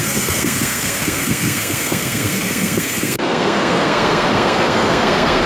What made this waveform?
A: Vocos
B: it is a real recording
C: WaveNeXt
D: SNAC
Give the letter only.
D